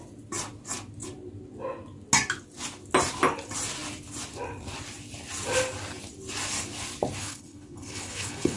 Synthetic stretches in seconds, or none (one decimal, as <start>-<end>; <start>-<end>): 7.2-8.6